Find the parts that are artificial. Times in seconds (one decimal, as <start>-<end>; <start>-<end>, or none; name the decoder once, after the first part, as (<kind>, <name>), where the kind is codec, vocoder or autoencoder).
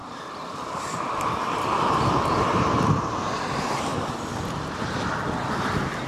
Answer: 0.0-3.9 (vocoder, BigVGAN v2); 5.5-6.1